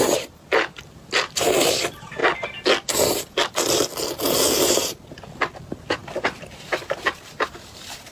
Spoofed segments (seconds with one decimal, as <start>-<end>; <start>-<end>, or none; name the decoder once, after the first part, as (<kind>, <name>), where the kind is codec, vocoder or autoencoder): 0.0-2.2 (vocoder, BigVGAN v2); 5.5-8.1